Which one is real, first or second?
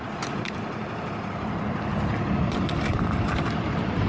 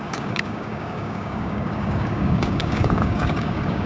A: first